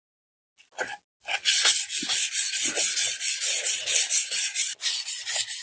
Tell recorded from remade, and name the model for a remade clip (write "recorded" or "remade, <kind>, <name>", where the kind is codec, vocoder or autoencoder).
recorded